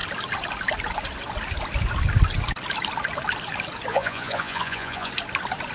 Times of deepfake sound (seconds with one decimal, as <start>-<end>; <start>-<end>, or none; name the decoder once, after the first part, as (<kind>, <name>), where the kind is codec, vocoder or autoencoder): 3.9-5.1 (vocoder, Vocos)